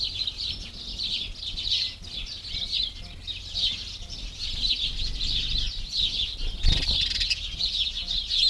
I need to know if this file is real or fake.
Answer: real